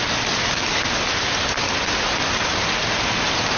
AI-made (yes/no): no